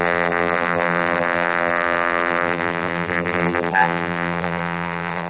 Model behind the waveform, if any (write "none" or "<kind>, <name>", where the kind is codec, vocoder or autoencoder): vocoder, BigVGAN v2